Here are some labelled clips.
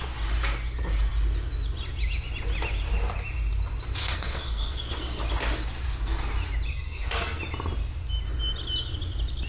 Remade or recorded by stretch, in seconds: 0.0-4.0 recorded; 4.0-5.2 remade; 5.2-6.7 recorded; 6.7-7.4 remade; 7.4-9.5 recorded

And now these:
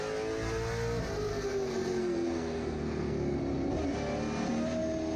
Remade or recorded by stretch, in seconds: 0.0-1.3 recorded; 1.3-3.4 remade; 3.4-5.2 recorded

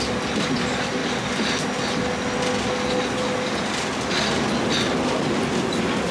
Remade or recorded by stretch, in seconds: 0.0-6.1 recorded

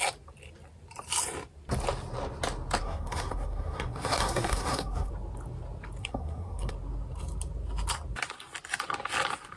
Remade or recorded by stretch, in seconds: 0.0-2.8 recorded; 2.8-5.1 remade; 5.1-6.0 recorded; 6.0-6.7 remade; 6.7-9.6 recorded